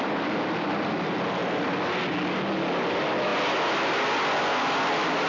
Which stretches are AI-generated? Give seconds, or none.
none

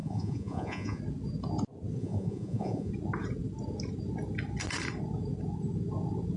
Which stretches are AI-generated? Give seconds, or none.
0.0-1.0 (vocoder, Vocos); 2.0-2.9